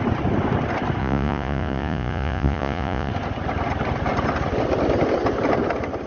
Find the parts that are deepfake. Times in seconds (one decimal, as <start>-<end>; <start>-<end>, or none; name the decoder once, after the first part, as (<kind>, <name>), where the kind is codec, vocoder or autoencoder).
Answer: 1.0-3.1 (vocoder, Vocos)